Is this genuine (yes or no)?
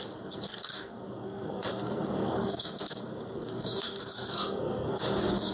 no